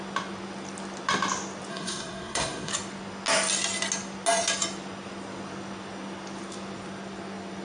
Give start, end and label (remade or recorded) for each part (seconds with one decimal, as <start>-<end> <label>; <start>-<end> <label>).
0.0-1.7 recorded; 1.7-2.7 remade; 2.7-7.6 recorded